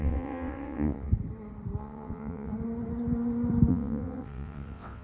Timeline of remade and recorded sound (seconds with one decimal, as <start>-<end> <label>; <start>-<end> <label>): 0.0-1.1 remade; 1.1-1.8 recorded; 1.8-2.5 remade; 2.5-3.7 recorded; 3.7-5.0 remade